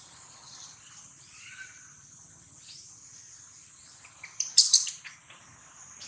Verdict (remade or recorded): remade